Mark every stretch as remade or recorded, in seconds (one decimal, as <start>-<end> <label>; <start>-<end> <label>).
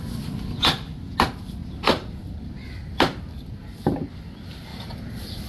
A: 0.0-4.7 recorded; 4.7-5.5 remade